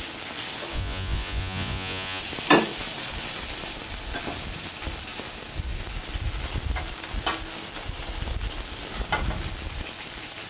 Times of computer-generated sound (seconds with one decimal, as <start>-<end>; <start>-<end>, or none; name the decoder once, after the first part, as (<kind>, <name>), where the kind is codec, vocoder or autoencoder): 0.7-2.2 (vocoder, Vocos)